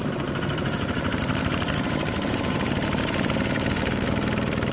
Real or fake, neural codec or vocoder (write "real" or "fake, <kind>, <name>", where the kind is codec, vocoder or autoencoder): fake, vocoder, BigVGAN v2